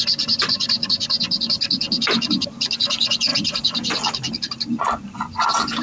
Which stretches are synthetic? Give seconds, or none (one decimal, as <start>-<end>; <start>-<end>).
3.3-4.8